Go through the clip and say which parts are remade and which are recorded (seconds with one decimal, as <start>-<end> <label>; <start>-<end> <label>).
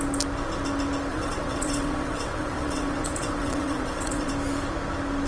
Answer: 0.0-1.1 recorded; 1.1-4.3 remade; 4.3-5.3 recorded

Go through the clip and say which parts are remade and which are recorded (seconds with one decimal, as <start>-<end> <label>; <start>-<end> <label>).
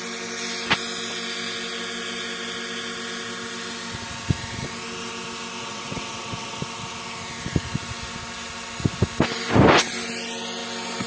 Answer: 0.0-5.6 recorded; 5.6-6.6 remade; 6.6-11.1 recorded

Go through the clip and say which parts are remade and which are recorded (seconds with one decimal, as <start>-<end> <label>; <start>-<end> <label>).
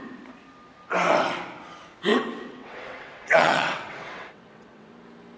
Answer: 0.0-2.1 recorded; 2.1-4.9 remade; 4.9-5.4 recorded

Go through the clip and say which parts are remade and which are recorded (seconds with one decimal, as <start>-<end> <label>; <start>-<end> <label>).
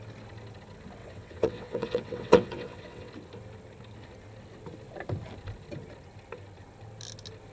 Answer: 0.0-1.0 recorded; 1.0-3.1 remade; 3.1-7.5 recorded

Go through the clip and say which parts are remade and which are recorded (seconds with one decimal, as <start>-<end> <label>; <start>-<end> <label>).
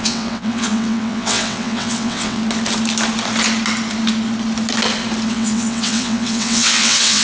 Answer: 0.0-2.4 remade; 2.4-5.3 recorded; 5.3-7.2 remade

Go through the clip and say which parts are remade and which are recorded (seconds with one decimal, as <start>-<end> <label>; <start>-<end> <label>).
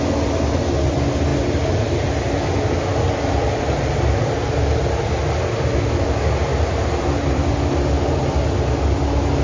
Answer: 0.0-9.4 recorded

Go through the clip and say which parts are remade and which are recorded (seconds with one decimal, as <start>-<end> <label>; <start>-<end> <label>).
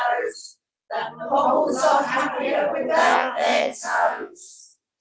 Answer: 0.0-3.0 recorded; 3.0-4.6 remade; 4.6-5.0 recorded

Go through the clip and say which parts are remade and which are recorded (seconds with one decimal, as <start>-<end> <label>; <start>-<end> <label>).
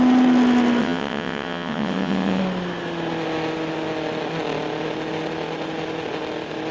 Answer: 0.0-0.8 recorded; 0.8-2.4 remade; 2.4-6.7 recorded